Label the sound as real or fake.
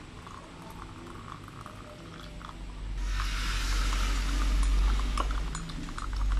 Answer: real